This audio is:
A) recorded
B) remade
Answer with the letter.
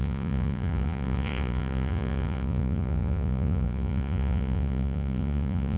B